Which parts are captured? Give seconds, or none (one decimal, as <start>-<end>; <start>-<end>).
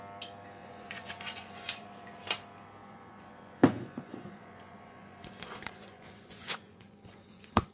0.0-0.6; 2.2-2.8